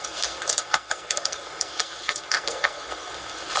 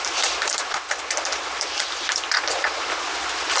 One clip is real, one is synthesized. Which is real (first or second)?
second